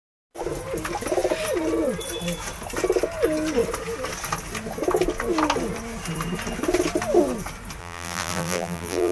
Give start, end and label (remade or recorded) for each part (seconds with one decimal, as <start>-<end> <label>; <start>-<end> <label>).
0.0-7.8 recorded; 7.8-9.1 remade